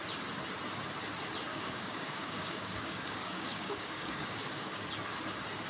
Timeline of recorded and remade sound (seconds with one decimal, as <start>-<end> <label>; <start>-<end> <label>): 0.0-1.5 recorded; 1.5-4.9 remade; 4.9-5.7 recorded